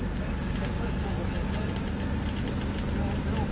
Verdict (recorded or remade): recorded